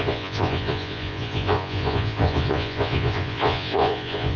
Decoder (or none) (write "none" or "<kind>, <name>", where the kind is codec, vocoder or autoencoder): vocoder, Vocos